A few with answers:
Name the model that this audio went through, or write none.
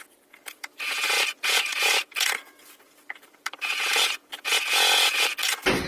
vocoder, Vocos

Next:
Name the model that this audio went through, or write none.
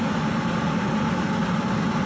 none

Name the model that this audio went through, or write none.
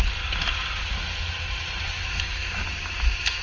none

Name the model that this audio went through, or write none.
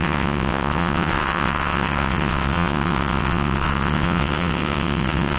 vocoder, WaveNeXt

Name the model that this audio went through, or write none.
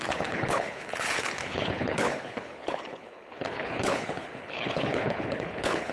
codec, HILCodec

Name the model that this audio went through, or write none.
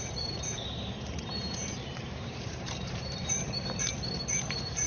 vocoder, BigVGAN v2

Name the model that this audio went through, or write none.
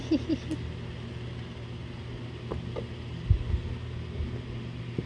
none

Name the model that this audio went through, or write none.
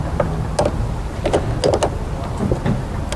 none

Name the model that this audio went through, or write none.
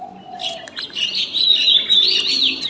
none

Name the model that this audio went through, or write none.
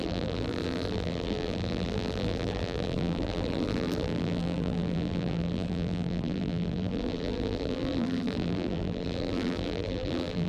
vocoder, BigVGAN v2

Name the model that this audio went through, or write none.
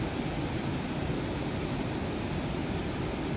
none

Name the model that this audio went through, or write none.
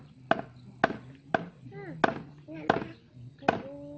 none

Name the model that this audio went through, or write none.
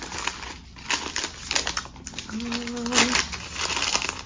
none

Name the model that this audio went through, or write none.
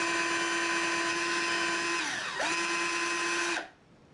none